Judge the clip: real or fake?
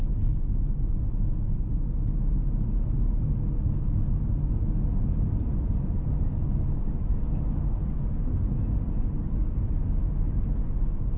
real